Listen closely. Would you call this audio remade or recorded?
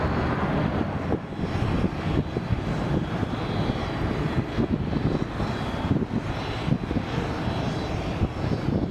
recorded